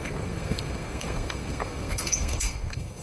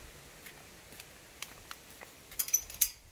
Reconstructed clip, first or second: first